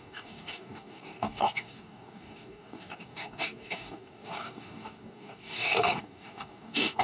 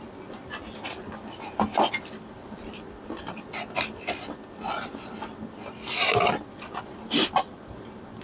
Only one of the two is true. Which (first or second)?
second